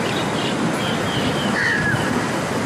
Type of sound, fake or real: real